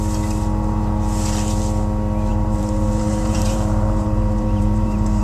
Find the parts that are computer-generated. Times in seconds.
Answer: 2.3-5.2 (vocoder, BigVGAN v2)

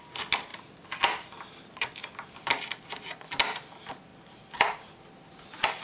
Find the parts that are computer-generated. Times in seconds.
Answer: none

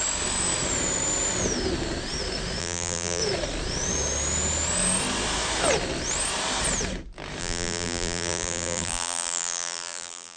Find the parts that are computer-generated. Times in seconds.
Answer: 2.6-3.2 (vocoder, BigVGAN v2); 7.4-10.4

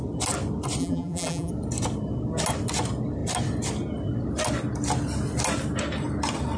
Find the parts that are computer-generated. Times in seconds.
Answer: 0.8-1.5 (vocoder, BigVGAN v2)